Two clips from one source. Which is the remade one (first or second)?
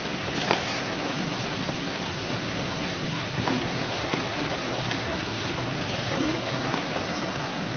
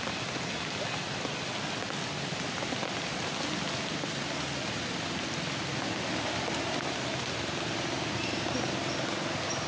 first